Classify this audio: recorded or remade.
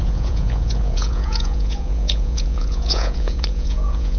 remade